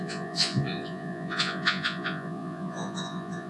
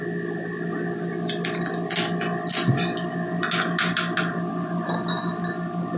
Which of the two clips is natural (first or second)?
second